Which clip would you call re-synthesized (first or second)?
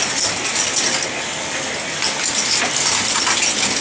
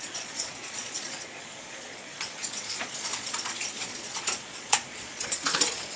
second